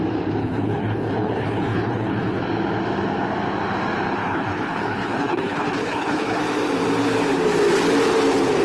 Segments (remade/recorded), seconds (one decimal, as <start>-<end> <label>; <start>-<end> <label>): 0.0-0.4 recorded; 0.4-2.4 remade; 2.4-4.2 recorded; 4.2-6.4 remade; 6.4-8.6 recorded